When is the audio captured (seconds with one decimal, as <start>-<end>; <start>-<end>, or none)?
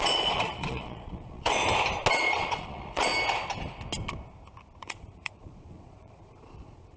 1.6-2.1; 3.1-4.8